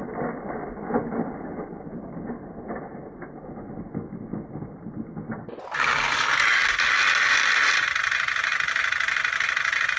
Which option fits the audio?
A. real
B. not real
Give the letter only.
A